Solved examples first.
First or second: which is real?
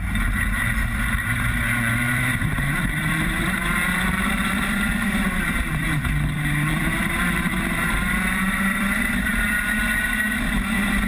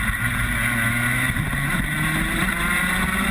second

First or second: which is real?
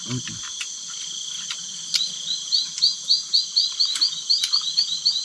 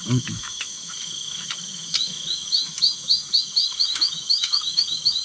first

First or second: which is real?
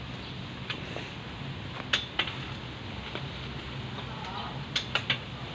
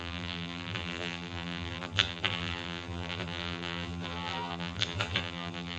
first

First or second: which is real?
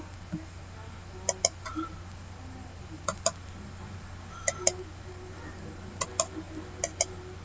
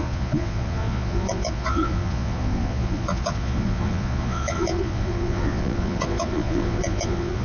first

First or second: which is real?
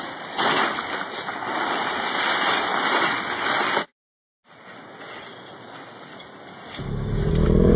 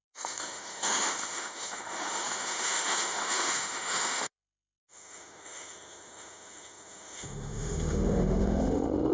first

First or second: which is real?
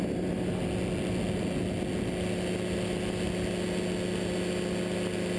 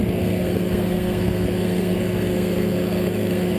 first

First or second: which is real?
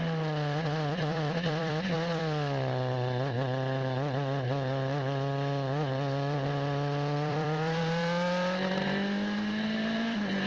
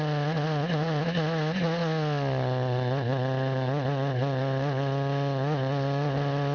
second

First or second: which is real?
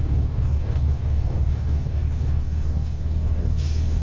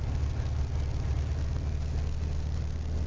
second